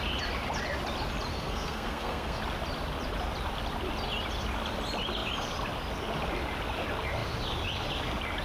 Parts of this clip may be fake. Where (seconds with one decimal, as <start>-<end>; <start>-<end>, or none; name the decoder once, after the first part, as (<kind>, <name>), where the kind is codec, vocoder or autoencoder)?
1.3-2.4 (codec, SNAC)